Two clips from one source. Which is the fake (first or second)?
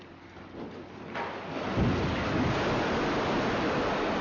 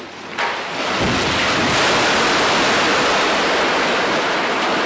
first